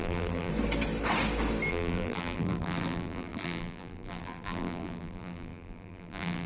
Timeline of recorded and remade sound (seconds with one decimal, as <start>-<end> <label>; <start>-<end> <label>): 0.0-0.5 remade; 0.5-1.7 recorded; 1.7-6.5 remade